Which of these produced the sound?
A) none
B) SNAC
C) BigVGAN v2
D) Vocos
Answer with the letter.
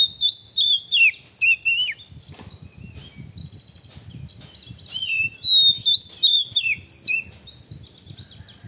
A